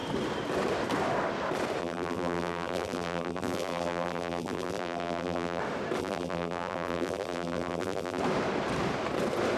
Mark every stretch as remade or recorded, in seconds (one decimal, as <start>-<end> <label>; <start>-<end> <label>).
0.0-1.8 recorded; 1.8-5.6 remade; 5.6-6.0 recorded; 6.0-8.2 remade; 8.2-9.6 recorded